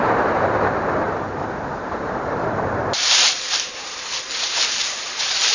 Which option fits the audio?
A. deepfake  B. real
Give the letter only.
A